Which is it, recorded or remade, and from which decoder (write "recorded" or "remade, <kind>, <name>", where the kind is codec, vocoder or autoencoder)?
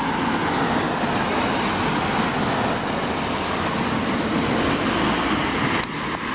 recorded